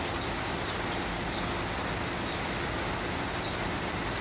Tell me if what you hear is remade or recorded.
recorded